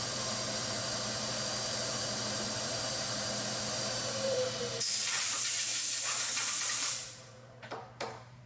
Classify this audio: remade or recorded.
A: remade